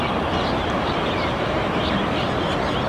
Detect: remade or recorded remade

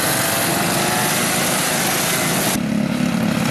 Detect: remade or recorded recorded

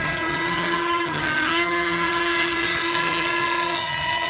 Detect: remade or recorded remade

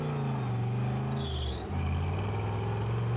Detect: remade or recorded recorded